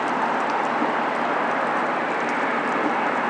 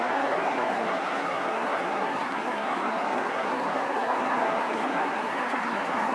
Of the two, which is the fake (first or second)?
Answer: second